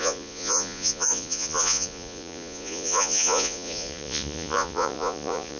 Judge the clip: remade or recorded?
remade